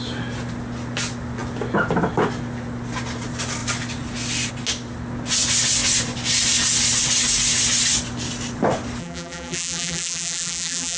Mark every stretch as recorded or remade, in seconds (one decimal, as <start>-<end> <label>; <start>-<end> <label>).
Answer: 0.0-9.0 recorded; 9.0-11.0 remade